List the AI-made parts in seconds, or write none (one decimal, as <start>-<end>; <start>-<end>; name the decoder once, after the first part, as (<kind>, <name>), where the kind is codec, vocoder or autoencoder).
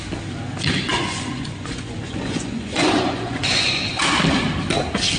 0.9-4.0 (vocoder, Vocos)